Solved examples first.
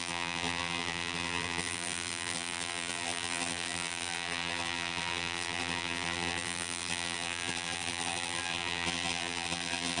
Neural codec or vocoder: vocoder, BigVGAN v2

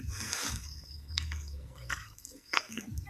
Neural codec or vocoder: codec, SNAC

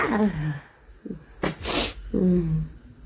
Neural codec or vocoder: none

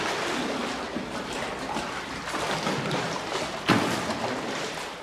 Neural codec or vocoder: none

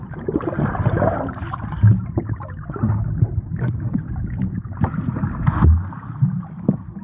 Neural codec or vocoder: none